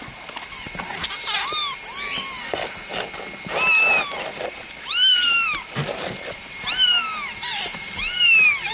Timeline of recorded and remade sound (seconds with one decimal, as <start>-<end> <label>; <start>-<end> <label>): 0.0-1.6 remade; 1.6-4.3 recorded; 4.3-8.7 remade